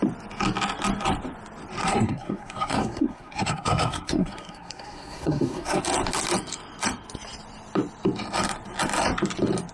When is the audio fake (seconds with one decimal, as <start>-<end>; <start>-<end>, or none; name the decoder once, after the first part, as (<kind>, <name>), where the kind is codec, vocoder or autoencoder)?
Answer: 1.8-5.8 (codec, SNAC)